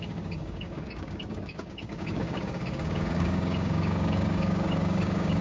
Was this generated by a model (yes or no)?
yes